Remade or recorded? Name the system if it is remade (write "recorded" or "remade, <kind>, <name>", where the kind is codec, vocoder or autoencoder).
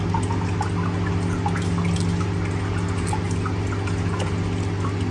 recorded